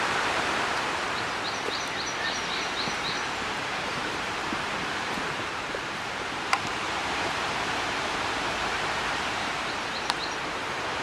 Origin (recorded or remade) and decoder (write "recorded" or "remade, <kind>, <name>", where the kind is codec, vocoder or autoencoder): remade, vocoder, BigVGAN v2